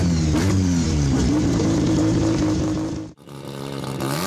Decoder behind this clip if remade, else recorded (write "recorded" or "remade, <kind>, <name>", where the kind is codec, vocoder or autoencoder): remade, vocoder, BigVGAN v2